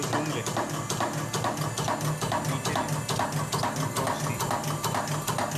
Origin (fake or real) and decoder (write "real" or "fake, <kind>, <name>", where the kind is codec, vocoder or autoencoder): real